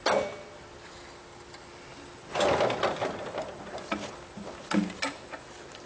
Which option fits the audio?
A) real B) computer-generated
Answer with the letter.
A